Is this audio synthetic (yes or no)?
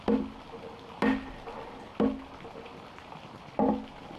no